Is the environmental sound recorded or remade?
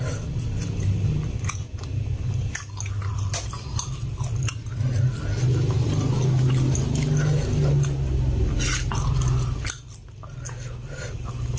recorded